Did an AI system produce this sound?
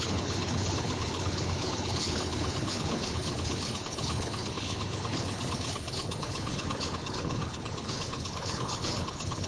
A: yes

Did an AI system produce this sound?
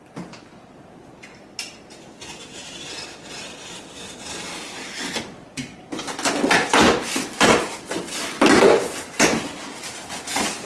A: no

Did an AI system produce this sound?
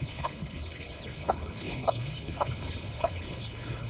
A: yes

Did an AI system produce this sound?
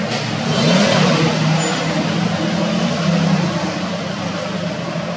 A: no